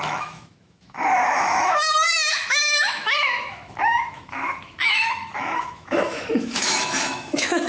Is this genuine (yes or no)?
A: no